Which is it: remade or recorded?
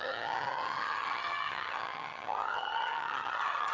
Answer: remade